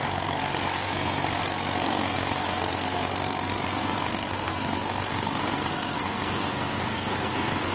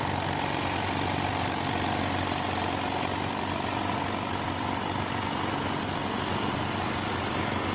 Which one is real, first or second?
second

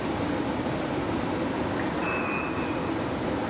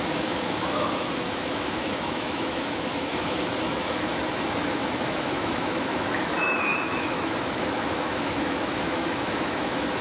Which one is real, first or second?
first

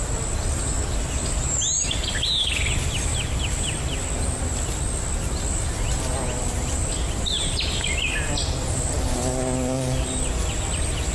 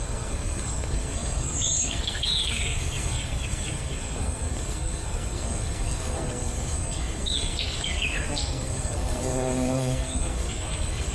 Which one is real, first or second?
first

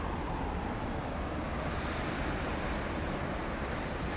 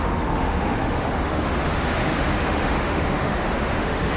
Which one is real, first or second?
first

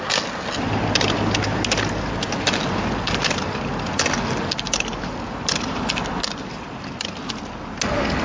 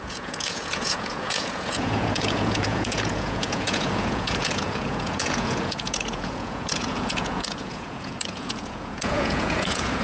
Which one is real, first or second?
first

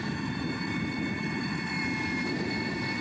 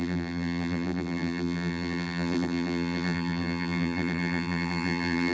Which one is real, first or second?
first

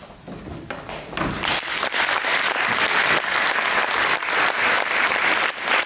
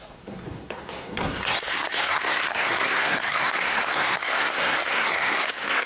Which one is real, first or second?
first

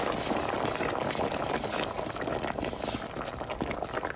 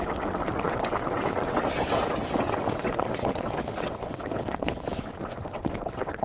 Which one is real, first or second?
first